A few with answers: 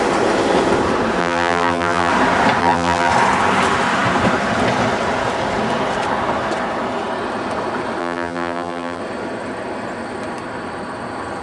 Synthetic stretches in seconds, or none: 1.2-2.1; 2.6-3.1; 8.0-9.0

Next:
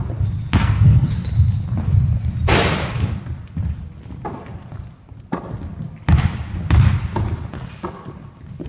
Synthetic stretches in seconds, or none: 0.6-1.1